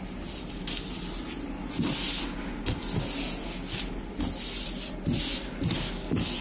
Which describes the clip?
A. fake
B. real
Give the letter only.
B